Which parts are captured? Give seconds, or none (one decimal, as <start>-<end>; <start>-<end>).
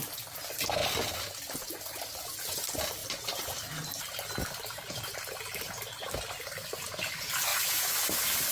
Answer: 0.0-0.8; 1.7-8.5